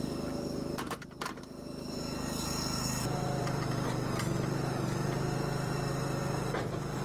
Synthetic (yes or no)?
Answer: yes